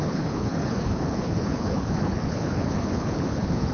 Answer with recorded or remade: remade